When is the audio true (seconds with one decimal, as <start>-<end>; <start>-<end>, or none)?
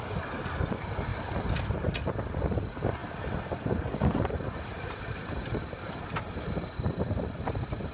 0.0-7.9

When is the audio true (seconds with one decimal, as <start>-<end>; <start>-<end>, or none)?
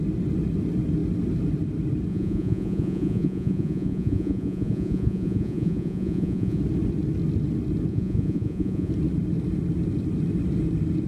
0.0-2.1; 6.6-7.9; 8.9-11.1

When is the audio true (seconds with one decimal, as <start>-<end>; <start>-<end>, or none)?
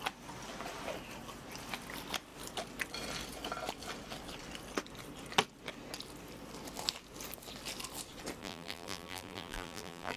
0.0-8.4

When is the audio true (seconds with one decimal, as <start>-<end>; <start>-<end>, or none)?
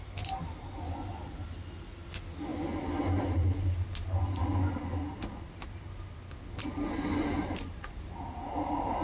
0.0-9.0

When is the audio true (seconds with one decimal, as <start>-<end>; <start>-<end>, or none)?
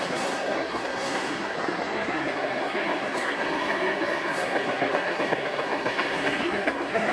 none